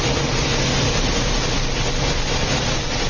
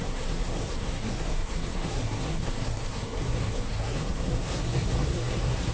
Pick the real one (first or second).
first